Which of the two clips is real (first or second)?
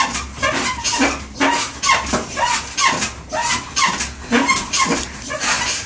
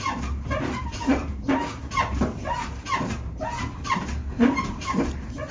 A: first